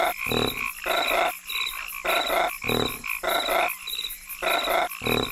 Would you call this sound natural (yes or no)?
yes